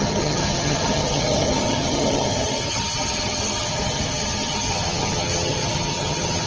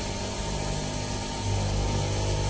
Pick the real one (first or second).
second